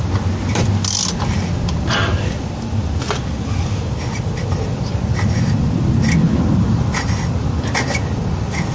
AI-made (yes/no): no